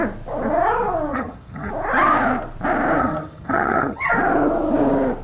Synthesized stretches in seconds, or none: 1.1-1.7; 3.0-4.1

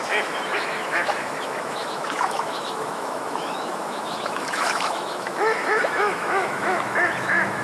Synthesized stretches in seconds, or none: 0.0-7.6

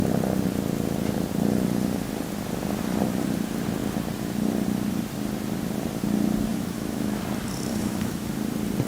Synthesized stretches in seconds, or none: 6.5-7.2; 7.7-8.3

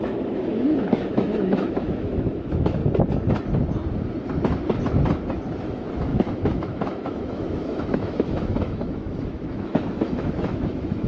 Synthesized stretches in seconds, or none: 0.0-2.8; 5.6-11.1